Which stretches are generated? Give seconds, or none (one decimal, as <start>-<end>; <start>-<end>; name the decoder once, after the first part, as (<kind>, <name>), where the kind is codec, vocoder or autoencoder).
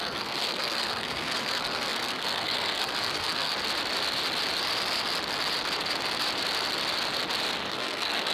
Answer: 0.0-3.5 (codec, SNAC); 7.7-8.3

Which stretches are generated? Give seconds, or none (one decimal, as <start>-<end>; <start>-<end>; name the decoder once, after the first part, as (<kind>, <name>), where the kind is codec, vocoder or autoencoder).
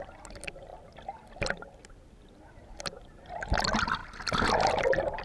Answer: none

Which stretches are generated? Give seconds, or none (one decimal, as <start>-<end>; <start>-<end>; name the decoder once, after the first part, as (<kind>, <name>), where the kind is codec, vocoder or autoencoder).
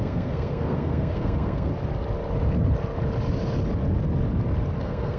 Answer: 0.0-1.7 (codec, SNAC); 4.8-5.2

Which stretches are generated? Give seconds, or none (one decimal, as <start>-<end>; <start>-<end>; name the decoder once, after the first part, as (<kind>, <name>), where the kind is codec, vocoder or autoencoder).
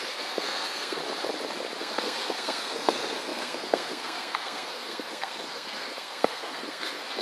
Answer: 0.0-1.0 (codec, SNAC); 1.8-7.2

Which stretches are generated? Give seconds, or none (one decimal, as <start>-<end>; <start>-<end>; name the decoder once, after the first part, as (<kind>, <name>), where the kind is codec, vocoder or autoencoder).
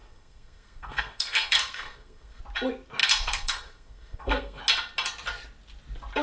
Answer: 0.0-2.4 (codec, SNAC); 3.0-4.6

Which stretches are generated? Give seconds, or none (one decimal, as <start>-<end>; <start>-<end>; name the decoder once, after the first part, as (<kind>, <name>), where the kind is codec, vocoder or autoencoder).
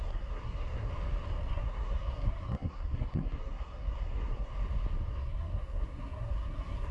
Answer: 0.0-0.9 (codec, SNAC); 1.5-4.5; 5.1-6.9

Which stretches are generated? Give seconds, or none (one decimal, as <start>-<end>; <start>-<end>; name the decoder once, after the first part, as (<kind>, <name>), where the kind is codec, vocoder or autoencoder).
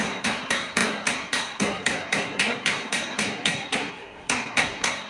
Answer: 0.0-5.1 (codec, SNAC)